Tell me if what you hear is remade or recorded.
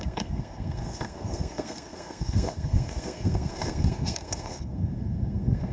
remade